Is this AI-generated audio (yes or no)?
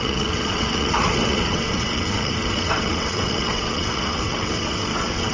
yes